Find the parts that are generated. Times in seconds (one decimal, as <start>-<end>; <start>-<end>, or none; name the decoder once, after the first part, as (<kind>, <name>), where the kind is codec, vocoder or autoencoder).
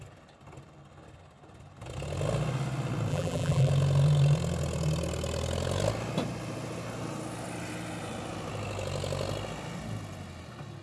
3.1-3.7 (vocoder, BigVGAN v2)